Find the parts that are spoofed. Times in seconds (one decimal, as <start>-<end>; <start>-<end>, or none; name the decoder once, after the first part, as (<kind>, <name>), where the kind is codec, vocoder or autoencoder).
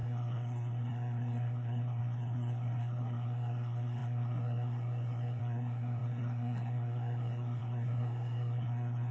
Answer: 0.0-9.1 (codec, SNAC)